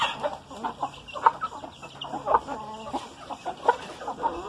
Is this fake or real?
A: real